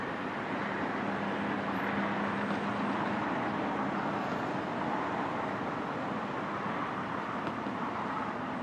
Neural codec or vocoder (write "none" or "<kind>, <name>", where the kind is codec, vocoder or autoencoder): none